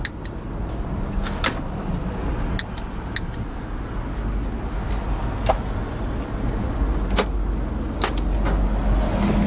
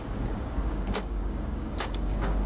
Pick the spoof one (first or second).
second